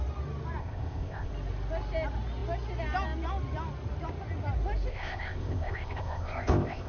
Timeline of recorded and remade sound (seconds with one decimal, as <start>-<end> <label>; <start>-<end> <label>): 0.0-0.6 recorded; 0.6-1.3 remade; 1.3-4.9 recorded; 4.9-6.9 remade